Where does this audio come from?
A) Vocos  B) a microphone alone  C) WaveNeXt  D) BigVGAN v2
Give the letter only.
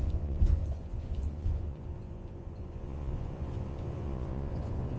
A